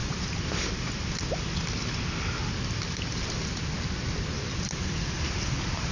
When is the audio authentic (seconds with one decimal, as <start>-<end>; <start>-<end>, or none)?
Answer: 0.0-5.9